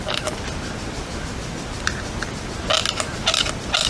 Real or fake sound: real